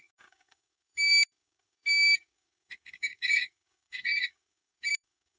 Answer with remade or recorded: remade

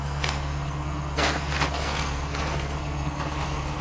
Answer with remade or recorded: remade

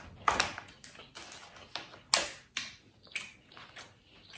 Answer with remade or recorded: recorded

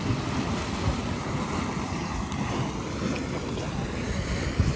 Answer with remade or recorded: recorded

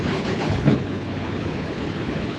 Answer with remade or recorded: remade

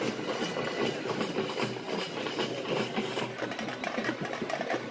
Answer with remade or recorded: recorded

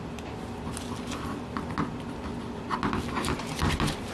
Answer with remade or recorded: recorded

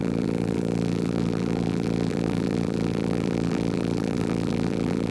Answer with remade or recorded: remade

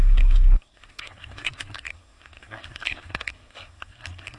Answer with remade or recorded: remade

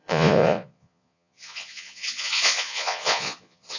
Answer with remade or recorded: remade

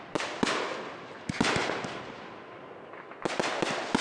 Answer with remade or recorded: recorded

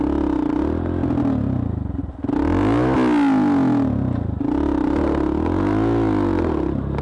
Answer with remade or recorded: recorded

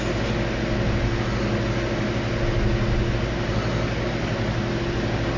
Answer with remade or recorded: recorded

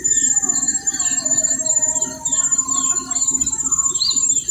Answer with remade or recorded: remade